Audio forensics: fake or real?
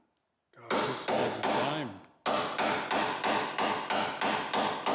real